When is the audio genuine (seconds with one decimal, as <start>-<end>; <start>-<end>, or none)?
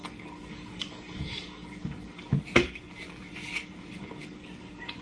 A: none